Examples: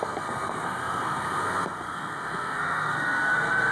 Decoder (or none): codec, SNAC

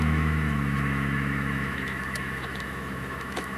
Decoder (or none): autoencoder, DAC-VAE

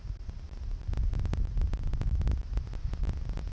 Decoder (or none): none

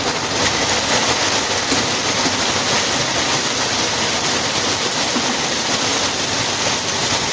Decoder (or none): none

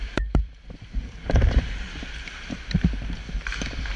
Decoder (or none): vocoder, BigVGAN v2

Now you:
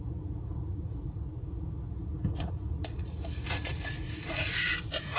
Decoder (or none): vocoder, Vocos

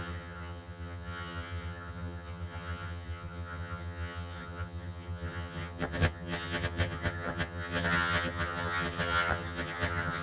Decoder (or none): vocoder, HiFi-GAN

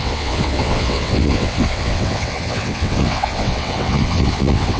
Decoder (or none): vocoder, WaveNeXt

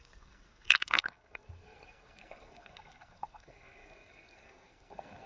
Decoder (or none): codec, SNAC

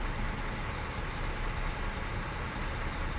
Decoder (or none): none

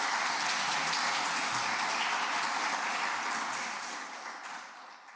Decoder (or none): none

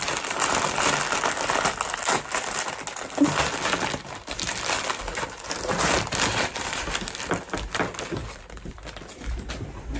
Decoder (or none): none